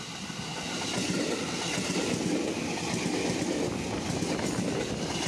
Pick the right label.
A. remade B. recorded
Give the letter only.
B